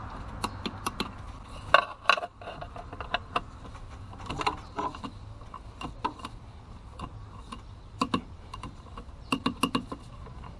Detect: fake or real real